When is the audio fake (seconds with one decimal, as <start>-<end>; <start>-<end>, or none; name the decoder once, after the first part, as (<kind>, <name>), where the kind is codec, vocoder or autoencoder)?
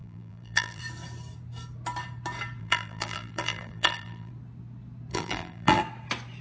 0.0-0.8 (vocoder, BigVGAN v2); 2.6-4.3; 5.1-5.8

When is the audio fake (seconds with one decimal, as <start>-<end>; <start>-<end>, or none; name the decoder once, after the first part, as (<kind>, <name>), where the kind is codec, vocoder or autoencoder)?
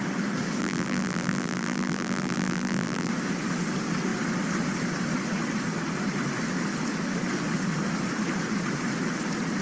0.6-3.1 (vocoder, BigVGAN v2)